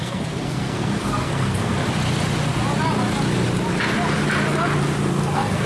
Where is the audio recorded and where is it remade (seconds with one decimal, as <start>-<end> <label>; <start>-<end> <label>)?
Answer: 0.0-1.7 remade; 1.7-5.1 recorded; 5.1-5.7 remade